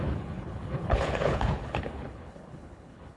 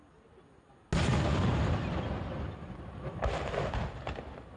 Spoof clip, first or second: first